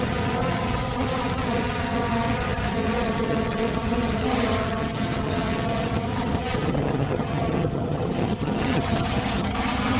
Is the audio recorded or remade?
remade